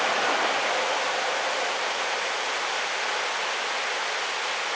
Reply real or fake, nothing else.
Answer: real